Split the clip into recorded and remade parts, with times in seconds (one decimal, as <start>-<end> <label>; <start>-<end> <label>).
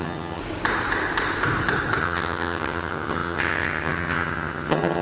0.0-0.4 remade; 0.4-2.0 recorded; 2.0-5.0 remade